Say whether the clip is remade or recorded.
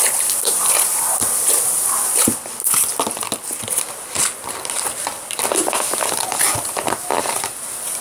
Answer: remade